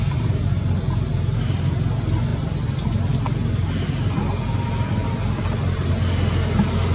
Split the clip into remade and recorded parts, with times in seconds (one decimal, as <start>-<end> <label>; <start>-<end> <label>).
0.0-6.9 recorded

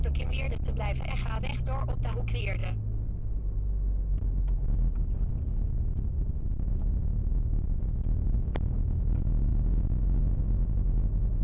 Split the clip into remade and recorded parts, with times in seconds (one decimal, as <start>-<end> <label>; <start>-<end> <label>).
0.0-11.4 recorded